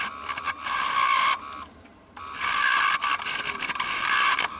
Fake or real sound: real